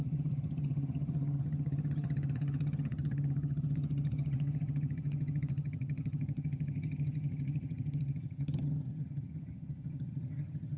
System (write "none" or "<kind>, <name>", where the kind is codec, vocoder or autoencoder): vocoder, HiFi-GAN